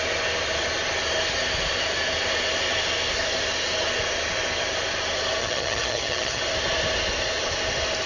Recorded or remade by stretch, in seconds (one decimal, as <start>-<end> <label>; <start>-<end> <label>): 0.0-5.4 recorded; 5.4-6.4 remade; 6.4-8.1 recorded